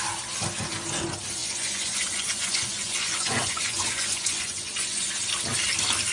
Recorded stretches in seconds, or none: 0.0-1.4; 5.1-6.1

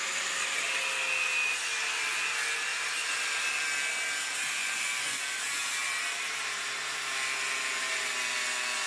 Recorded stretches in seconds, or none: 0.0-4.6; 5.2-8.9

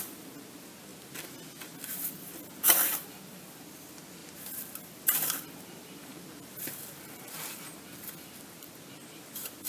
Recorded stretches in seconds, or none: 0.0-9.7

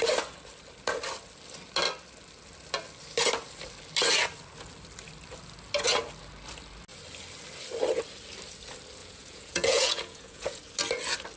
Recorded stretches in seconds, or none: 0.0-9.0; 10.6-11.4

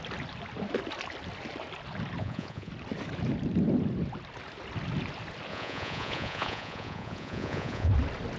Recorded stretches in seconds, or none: 0.0-2.2; 2.7-5.5; 7.9-8.4

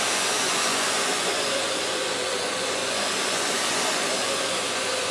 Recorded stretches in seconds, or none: none